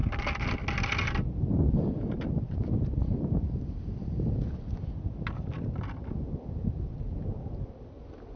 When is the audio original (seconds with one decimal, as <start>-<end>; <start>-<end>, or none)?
0.0-8.4